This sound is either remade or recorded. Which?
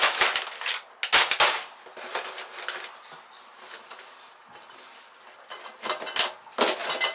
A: recorded